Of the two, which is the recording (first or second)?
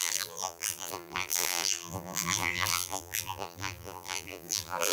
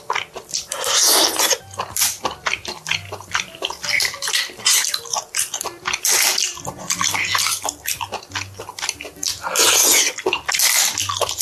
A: second